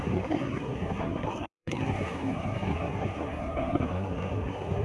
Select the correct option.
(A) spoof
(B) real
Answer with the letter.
A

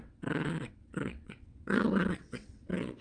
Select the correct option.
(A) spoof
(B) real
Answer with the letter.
A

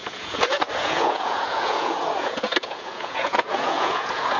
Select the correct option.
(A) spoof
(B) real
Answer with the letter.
A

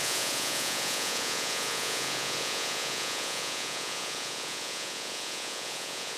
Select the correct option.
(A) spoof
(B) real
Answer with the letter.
A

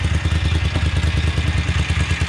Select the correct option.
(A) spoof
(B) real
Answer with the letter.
B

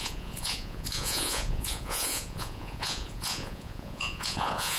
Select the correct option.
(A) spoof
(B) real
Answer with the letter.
A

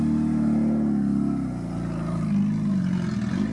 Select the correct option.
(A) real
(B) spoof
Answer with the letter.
A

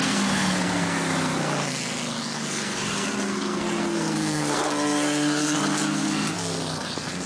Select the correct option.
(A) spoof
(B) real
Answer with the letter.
A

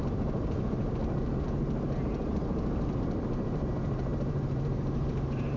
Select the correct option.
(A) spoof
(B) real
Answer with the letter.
A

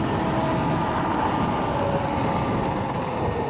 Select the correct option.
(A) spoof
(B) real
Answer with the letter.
B